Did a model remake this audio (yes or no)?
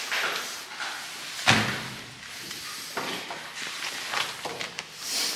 no